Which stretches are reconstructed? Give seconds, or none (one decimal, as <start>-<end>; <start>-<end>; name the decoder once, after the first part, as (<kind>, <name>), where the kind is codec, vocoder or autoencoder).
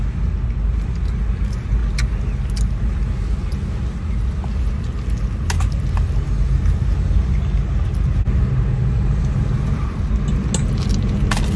none